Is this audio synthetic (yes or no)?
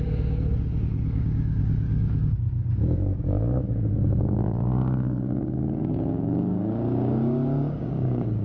yes